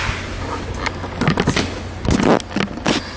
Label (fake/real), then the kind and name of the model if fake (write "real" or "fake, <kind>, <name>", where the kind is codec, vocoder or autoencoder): real